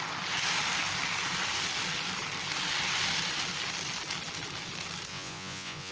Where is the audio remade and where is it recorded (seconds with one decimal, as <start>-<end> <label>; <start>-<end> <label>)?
0.0-5.1 recorded; 5.1-5.9 remade